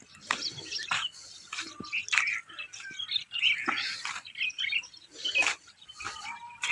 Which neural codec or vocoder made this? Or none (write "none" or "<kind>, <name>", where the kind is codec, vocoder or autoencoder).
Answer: none